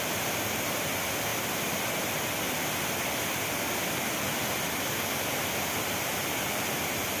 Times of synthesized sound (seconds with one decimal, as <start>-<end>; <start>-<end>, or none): 0.0-1.3; 5.6-7.2